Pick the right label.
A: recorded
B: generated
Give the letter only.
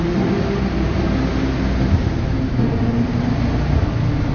A